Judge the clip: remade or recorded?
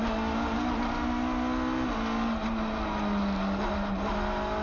recorded